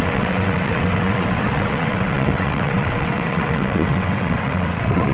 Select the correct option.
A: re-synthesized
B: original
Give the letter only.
A